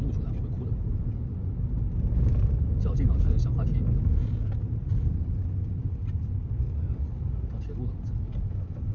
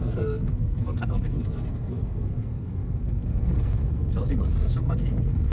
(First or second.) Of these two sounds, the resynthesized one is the second